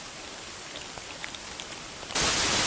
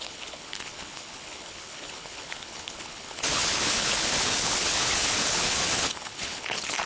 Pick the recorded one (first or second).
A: first